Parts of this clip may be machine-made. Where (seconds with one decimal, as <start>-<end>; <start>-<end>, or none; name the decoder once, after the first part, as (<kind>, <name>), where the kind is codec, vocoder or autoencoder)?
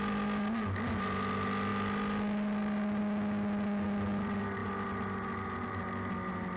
none